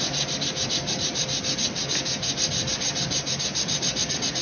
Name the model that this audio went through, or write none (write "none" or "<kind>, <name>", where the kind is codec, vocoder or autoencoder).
none